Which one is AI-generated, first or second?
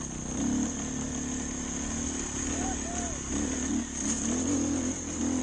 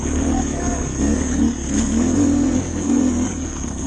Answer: second